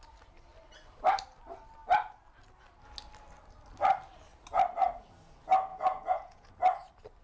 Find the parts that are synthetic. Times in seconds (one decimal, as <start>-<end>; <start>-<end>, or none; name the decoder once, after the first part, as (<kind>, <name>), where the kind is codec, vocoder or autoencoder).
5.7-6.5 (vocoder, Vocos)